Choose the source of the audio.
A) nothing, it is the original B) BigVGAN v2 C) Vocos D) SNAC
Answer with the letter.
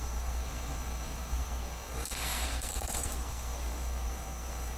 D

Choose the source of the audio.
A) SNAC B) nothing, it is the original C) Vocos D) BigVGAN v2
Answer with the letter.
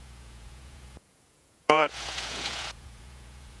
C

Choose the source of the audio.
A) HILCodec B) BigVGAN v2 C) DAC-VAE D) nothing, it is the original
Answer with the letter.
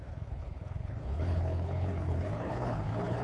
A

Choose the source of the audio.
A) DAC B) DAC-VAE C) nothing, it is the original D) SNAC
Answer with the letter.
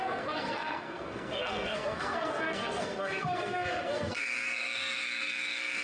D